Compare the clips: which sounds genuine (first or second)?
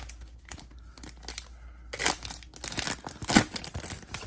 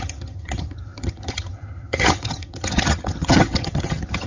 first